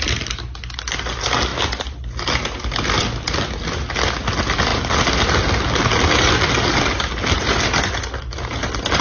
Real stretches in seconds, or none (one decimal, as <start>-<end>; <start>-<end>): 0.0-9.0

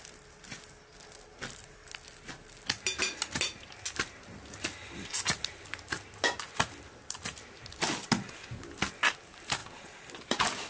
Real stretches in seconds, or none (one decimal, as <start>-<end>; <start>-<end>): 0.0-10.7

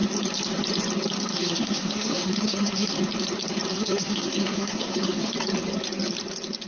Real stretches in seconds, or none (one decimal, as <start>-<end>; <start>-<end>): 0.0-1.3; 3.0-3.7; 5.3-6.7

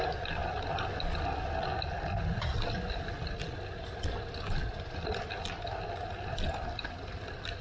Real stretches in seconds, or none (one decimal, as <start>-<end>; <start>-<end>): 0.0-7.6

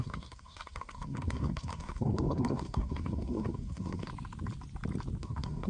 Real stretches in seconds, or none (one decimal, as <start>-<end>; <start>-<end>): 4.1-5.2